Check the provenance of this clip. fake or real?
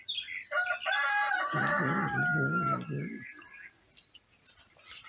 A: real